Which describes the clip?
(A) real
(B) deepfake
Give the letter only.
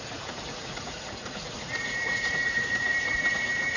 B